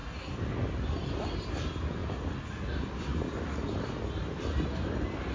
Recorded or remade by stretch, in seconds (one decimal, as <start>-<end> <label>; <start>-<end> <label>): 0.0-5.3 recorded